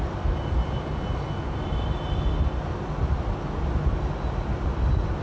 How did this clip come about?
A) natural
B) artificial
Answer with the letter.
A